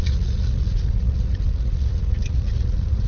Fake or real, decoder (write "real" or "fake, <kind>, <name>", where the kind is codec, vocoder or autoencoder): fake, vocoder, Vocos